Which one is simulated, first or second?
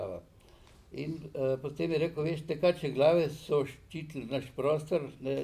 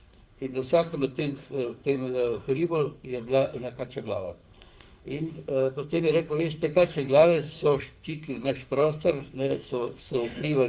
second